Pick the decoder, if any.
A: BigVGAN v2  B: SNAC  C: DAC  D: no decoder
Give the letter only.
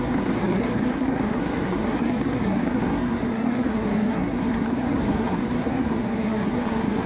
B